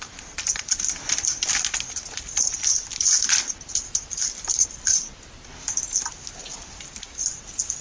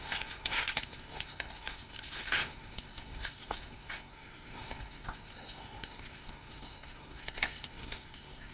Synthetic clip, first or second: second